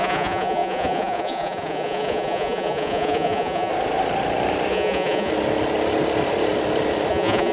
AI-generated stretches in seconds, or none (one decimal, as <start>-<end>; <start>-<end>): 0.0-3.7; 4.7-5.3; 7.1-7.5